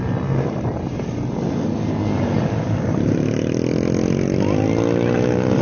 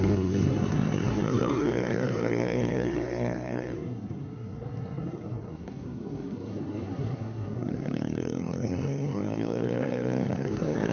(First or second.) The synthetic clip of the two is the second